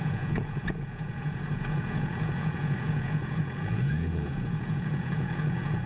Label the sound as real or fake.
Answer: fake